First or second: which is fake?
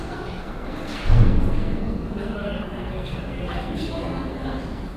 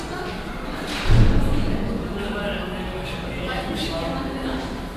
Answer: first